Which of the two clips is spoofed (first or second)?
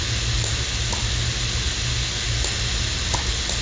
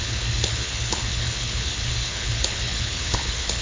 second